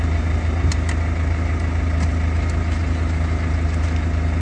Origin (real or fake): real